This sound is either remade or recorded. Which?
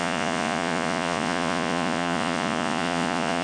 remade